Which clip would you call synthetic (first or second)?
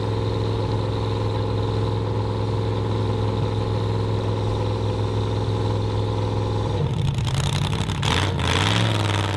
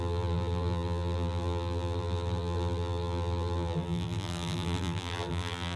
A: second